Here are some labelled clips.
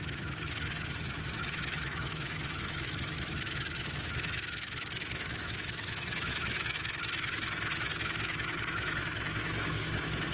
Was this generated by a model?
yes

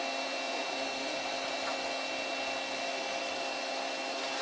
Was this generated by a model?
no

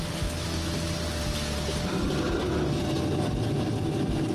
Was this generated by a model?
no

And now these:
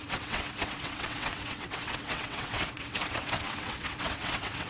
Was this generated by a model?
yes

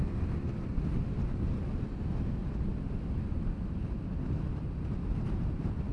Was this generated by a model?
no